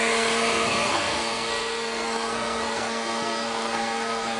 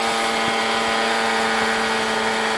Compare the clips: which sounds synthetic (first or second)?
first